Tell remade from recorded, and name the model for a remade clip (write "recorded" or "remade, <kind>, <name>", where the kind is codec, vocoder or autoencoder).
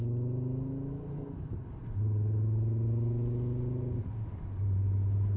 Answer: recorded